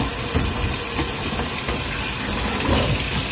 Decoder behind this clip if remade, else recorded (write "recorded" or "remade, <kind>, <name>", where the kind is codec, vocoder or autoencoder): recorded